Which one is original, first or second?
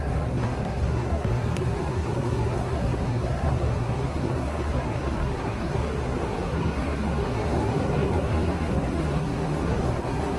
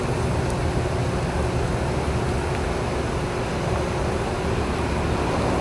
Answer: second